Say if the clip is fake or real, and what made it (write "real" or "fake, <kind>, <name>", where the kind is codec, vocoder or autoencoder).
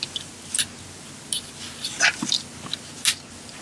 real